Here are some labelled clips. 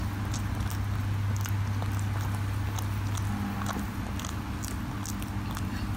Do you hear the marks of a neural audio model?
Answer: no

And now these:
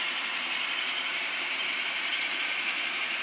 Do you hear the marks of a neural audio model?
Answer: yes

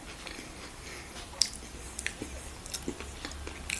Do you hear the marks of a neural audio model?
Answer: no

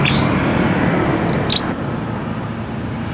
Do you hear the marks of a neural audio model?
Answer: no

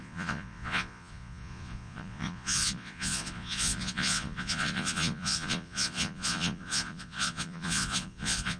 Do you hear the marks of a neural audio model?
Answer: yes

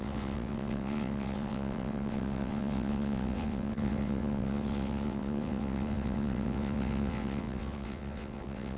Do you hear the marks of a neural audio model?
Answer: yes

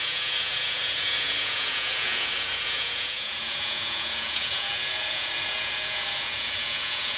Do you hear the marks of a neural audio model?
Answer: yes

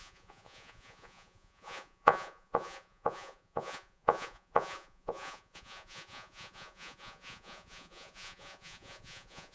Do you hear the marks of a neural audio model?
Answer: yes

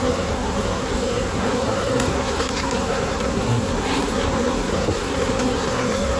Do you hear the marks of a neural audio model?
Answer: yes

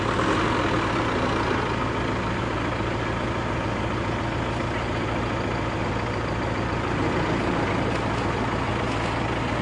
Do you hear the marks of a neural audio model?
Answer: no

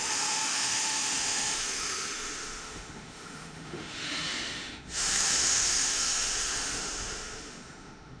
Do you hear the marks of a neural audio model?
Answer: yes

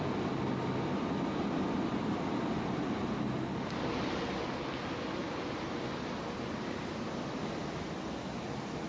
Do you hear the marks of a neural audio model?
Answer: no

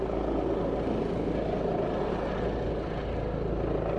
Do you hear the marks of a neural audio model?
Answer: no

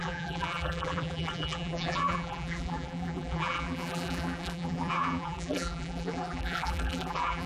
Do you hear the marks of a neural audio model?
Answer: yes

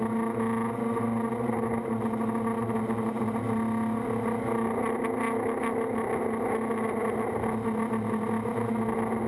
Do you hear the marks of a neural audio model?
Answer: no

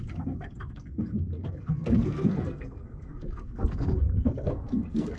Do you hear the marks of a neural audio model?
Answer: yes